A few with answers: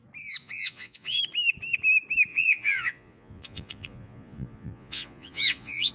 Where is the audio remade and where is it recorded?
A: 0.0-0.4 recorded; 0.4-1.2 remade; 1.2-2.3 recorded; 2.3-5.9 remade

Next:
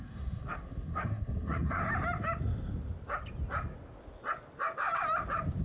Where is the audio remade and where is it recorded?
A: 0.0-1.8 remade; 1.8-5.6 recorded

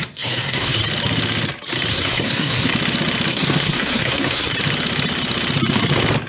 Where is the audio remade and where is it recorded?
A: 0.0-0.8 remade; 0.8-1.9 recorded; 1.9-2.7 remade; 2.7-3.3 recorded; 3.3-4.5 remade; 4.5-6.3 recorded

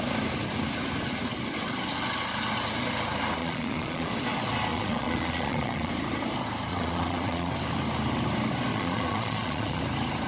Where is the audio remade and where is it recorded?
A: 0.0-3.4 recorded; 3.4-4.1 remade; 4.1-4.7 recorded; 4.7-5.9 remade; 5.9-6.7 recorded; 6.7-7.5 remade; 7.5-8.7 recorded; 8.7-9.8 remade; 9.8-10.3 recorded

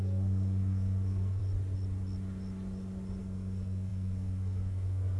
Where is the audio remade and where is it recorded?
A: 0.0-1.4 remade; 1.4-3.2 recorded; 3.2-5.2 remade

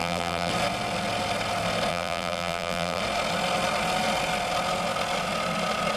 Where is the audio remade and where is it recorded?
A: 0.0-0.5 remade; 0.5-1.9 recorded; 1.9-3.0 remade; 3.0-6.0 recorded

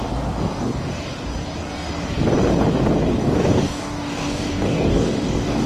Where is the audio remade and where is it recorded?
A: 0.0-3.2 recorded; 3.2-5.7 remade

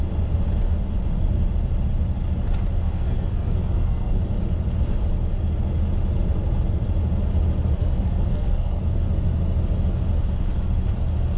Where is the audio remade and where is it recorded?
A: 0.0-2.8 recorded; 2.8-4.2 remade; 4.2-7.8 recorded; 7.8-8.8 remade; 8.8-11.4 recorded